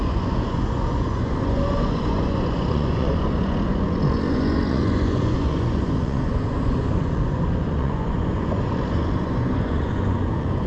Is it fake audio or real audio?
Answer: fake